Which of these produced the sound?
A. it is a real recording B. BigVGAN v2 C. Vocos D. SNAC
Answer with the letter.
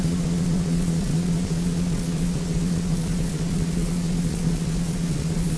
C